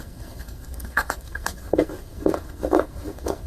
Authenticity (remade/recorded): remade